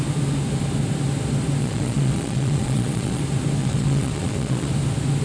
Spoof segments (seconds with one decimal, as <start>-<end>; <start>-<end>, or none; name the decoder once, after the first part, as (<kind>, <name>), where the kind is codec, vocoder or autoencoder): 1.6-3.2 (vocoder, Vocos); 3.6-4.7